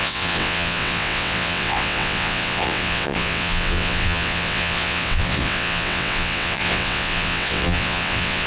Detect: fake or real fake